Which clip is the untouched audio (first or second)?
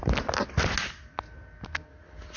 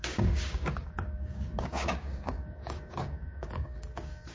first